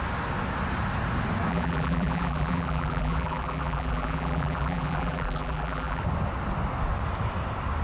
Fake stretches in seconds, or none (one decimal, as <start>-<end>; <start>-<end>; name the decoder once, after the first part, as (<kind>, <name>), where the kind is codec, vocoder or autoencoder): 1.5-6.0 (vocoder, BigVGAN v2)